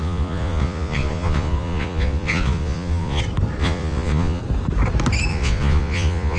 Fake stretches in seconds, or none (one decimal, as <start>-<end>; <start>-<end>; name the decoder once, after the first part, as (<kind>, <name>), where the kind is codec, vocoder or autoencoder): 0.0-3.2 (vocoder, Vocos); 3.6-4.4; 5.3-6.4